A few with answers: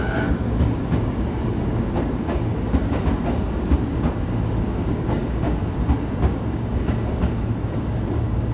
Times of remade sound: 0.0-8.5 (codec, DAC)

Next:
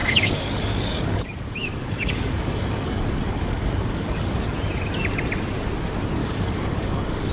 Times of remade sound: 0.0-4.4 (codec, DAC); 6.2-7.3

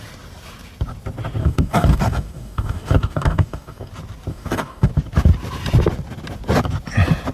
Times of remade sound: 1.4-3.9 (codec, DAC); 4.3-4.9

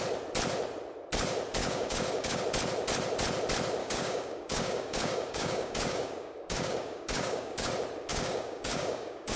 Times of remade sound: 1.6-2.4 (codec, DAC); 3.8-7.7; 8.1-9.4